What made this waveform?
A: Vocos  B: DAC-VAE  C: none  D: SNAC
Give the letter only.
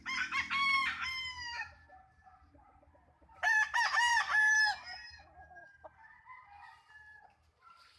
C